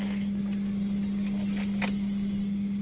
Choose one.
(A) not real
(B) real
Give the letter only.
B